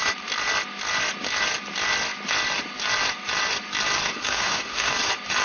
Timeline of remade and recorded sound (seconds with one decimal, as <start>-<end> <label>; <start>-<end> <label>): 0.0-4.1 recorded; 4.1-4.9 remade; 4.9-5.4 recorded